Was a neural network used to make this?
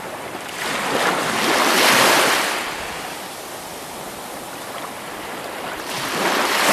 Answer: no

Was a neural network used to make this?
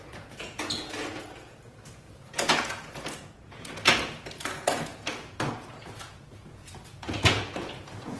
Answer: yes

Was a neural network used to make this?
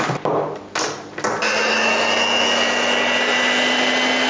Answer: no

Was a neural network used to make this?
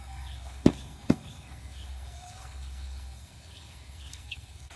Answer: yes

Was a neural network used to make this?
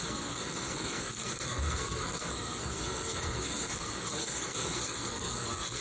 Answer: yes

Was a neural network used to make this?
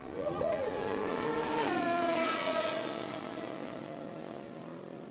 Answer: yes